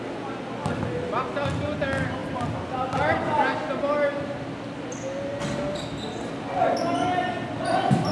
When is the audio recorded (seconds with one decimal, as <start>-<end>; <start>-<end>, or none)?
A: 0.0-8.1